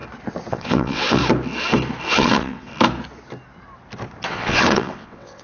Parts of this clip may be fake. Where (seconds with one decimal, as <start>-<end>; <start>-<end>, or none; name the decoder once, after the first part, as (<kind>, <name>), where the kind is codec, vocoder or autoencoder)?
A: 0.5-1.2 (vocoder, WaveNeXt); 2.1-2.7; 4.3-5.4